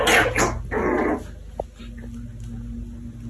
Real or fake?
real